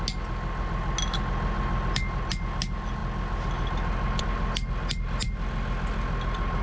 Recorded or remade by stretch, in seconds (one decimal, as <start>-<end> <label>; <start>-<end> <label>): 0.0-6.6 recorded